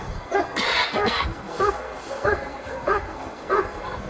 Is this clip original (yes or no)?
no